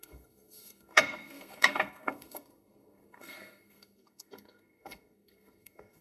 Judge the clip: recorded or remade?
remade